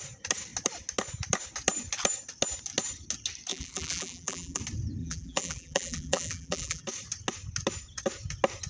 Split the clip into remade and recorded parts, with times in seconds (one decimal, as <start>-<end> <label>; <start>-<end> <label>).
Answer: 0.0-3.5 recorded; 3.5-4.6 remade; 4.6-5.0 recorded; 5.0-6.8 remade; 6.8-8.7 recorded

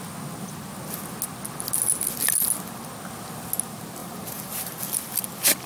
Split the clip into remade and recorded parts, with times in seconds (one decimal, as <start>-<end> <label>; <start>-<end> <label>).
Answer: 0.0-4.0 recorded; 4.0-4.8 remade; 4.8-5.7 recorded

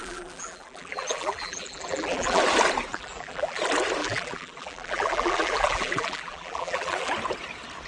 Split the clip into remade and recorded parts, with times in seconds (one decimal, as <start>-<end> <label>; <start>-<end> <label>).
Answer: 0.0-2.4 remade; 2.4-2.9 recorded; 2.9-3.6 remade; 3.6-4.0 recorded; 4.0-7.1 remade; 7.1-7.9 recorded

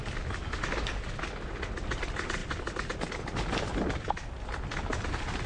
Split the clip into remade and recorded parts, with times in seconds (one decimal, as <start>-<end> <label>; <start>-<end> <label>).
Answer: 0.0-5.5 recorded

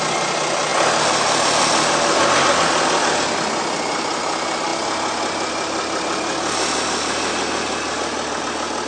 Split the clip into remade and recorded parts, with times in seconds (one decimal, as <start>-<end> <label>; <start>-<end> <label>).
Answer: 0.0-8.9 recorded

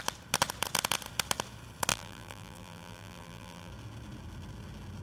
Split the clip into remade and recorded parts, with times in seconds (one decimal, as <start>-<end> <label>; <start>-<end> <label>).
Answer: 0.0-1.9 recorded; 1.9-3.7 remade; 3.7-5.0 recorded